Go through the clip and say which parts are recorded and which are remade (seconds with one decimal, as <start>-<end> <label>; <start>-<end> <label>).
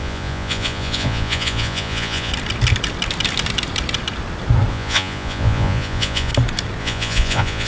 0.0-2.3 remade; 2.3-4.7 recorded; 4.7-6.3 remade; 6.3-6.8 recorded; 6.8-7.7 remade